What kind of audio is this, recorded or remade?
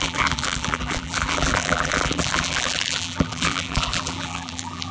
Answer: remade